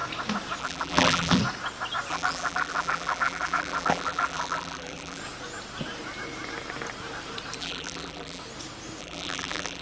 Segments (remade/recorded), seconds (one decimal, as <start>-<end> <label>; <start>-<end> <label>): 0.0-0.6 recorded; 0.6-1.4 remade; 1.4-2.1 recorded; 2.1-5.2 remade; 5.2-7.6 recorded; 7.6-8.4 remade; 8.4-9.0 recorded; 9.0-9.8 remade